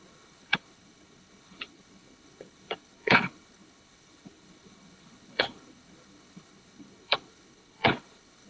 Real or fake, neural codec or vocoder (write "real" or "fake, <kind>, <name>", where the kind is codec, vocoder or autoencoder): fake, codec, HILCodec